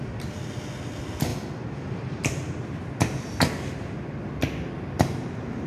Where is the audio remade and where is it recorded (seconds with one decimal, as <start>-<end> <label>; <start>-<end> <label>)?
0.0-5.7 recorded